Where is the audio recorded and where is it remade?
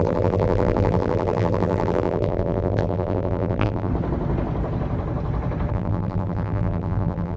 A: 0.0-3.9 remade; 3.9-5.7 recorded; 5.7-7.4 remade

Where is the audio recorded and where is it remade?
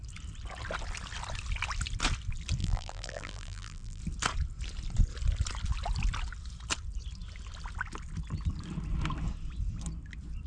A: 0.0-2.6 recorded; 2.6-4.0 remade; 4.0-10.5 recorded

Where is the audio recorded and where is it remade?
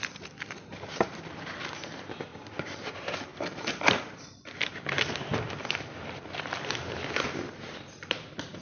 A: 0.0-5.3 remade; 5.3-7.4 recorded; 7.4-8.6 remade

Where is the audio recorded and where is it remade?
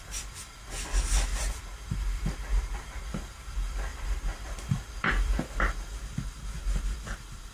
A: 0.0-1.3 recorded; 1.3-3.0 remade; 3.0-3.9 recorded; 3.9-5.1 remade; 5.1-7.5 recorded